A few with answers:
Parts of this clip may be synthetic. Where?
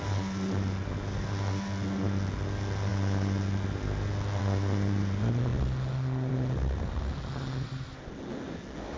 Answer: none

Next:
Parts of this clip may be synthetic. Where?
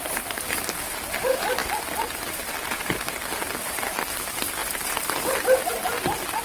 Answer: 0.0-6.4 (vocoder, BigVGAN v2)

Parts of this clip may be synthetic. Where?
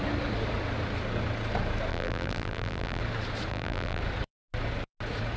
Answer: 1.9-3.0 (vocoder, BigVGAN v2); 3.5-4.0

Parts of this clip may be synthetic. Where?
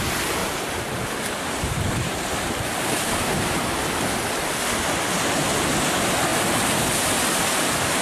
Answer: 0.4-3.7 (vocoder, BigVGAN v2)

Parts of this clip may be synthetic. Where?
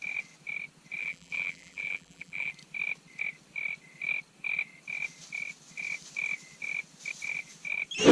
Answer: 1.0-2.5 (vocoder, BigVGAN v2)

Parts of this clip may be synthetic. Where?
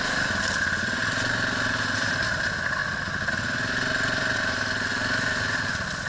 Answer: none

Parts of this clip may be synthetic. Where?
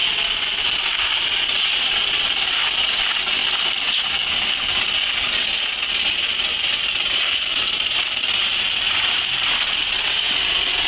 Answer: 1.7-3.4 (vocoder, BigVGAN v2); 6.6-10.9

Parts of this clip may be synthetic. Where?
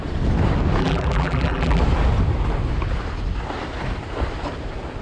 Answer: 0.8-1.8 (vocoder, BigVGAN v2)